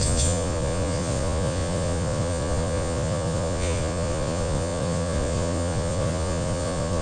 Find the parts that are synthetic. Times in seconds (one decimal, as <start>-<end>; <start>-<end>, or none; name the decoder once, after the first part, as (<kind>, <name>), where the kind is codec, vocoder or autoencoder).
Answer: 0.0-7.0 (vocoder, Vocos)